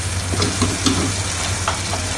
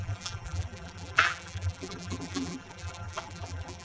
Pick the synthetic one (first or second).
second